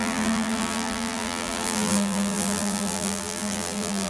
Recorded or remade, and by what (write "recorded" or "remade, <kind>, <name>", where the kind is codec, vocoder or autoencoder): remade, vocoder, BigVGAN v2